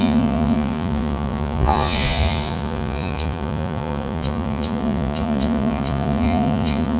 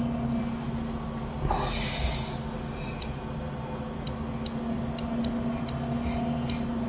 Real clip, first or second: second